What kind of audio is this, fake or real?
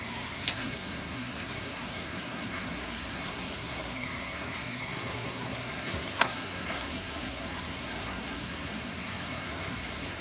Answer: fake